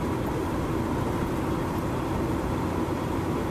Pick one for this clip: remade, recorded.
recorded